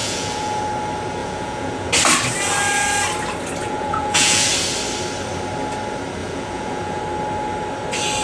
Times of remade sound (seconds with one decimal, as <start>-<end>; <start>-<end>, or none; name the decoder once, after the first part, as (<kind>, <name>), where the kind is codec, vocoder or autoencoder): 0.0-0.6 (vocoder, Vocos); 1.2-1.9; 3.6-4.5; 6.2-7.0